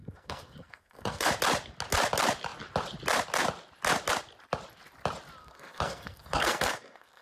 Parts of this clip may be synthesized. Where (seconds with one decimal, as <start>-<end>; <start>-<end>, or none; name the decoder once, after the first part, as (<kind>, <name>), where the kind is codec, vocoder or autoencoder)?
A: 0.0-1.3 (codec, SNAC); 5.4-7.2